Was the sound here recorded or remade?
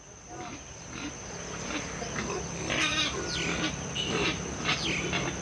recorded